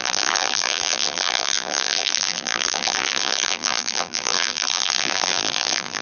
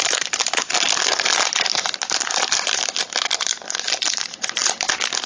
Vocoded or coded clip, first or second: first